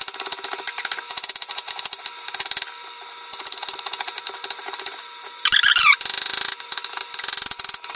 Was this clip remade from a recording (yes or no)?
no